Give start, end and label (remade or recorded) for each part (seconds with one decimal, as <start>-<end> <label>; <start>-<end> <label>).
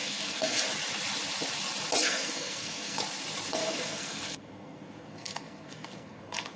0.0-0.6 remade; 0.6-2.0 recorded; 2.0-3.0 remade; 3.0-3.5 recorded; 3.5-6.6 remade